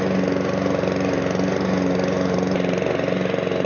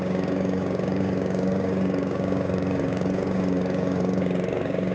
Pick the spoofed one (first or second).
second